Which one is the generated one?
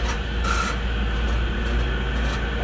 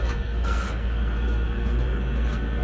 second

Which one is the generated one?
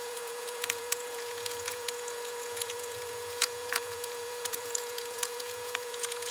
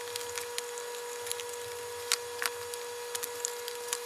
first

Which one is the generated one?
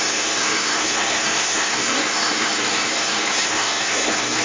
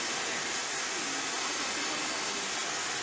first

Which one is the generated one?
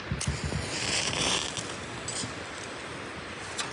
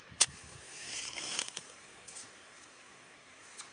second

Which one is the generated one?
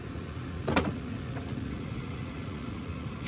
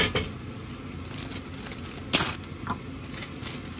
first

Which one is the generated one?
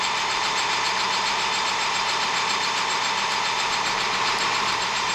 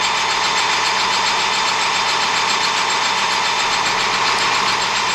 first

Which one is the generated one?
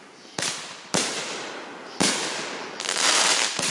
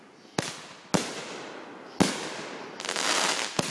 first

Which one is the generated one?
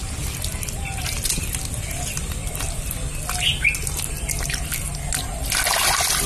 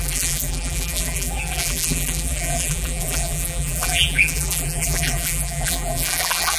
second